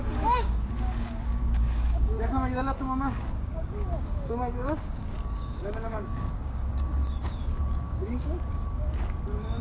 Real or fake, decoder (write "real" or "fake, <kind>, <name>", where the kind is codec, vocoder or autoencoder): fake, codec, DAC